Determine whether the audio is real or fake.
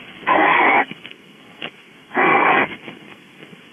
fake